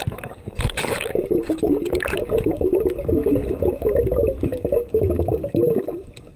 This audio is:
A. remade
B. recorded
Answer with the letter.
A